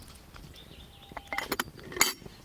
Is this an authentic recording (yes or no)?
yes